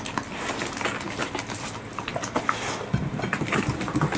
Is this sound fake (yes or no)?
no